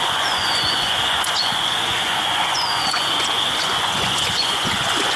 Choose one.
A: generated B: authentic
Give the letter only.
A